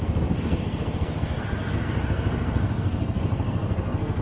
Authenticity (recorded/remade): remade